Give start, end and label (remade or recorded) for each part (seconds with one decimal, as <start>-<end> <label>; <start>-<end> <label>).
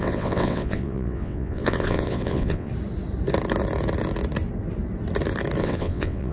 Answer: 0.0-2.7 remade; 2.7-5.6 recorded; 5.6-6.3 remade